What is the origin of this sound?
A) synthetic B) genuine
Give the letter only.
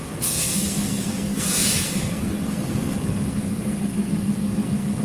A